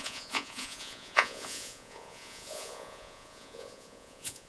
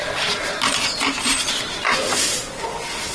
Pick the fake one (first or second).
first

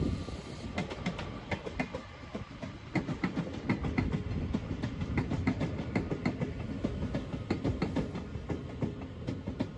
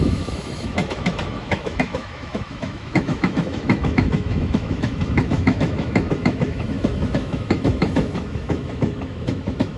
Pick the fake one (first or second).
second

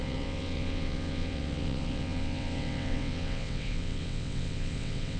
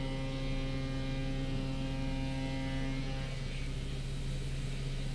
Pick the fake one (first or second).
first